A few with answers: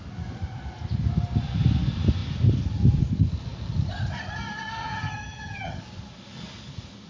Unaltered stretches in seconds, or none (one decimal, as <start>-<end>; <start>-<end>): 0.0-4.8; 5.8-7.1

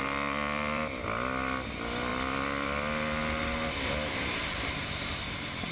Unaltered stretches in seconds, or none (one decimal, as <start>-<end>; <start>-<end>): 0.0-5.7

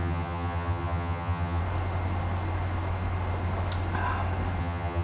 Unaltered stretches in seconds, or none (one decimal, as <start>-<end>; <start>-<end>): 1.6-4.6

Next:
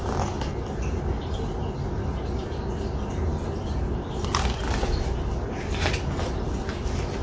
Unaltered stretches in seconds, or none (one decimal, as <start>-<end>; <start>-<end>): 0.0-7.2

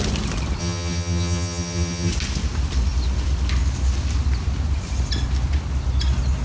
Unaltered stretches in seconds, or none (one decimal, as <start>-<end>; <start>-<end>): 0.0-0.6; 2.1-6.4

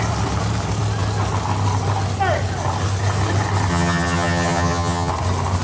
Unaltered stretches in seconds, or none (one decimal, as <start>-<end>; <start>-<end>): 0.0-3.7; 5.1-5.6

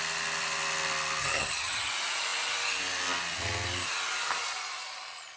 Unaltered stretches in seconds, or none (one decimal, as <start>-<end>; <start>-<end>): 0.0-1.2; 1.9-5.4

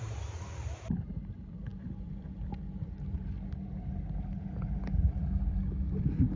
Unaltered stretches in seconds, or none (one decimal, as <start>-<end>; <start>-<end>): 0.0-6.4